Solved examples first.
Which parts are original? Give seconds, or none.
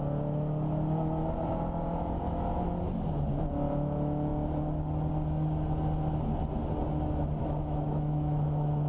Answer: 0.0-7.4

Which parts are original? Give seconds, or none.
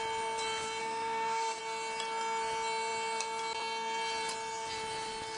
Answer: 0.0-0.8; 1.6-5.4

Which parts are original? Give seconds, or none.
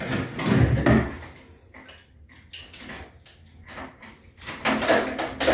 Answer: 0.0-5.5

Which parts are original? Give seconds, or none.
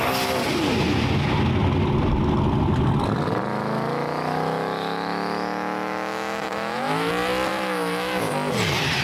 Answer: 0.0-3.5; 7.1-7.5; 8.2-9.0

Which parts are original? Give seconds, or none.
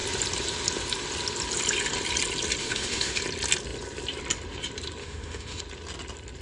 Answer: 0.0-2.6; 3.2-5.0; 5.6-6.4